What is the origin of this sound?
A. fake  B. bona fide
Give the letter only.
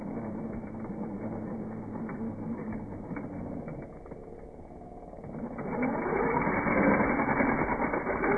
B